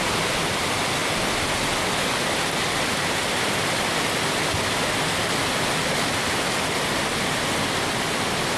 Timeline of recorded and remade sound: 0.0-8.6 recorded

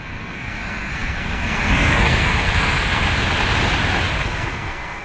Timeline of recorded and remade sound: 0.0-3.0 remade; 3.0-4.2 recorded; 4.2-5.0 remade

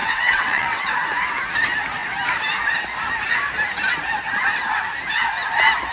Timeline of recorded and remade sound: 0.0-0.9 remade; 0.9-5.9 recorded